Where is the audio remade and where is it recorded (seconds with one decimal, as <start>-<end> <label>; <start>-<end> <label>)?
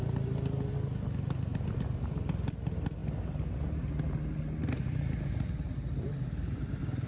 0.0-7.1 recorded